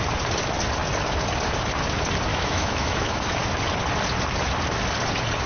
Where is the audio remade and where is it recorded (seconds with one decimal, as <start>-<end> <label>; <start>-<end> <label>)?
0.0-2.3 recorded; 2.3-3.4 remade; 3.4-5.5 recorded